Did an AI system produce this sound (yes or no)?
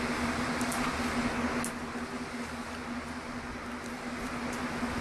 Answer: no